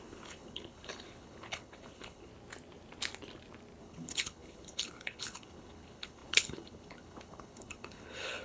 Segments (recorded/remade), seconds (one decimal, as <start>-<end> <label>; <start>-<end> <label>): 0.0-2.3 remade; 2.3-3.8 recorded; 3.8-8.4 remade